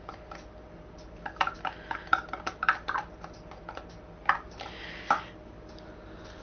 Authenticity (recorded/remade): recorded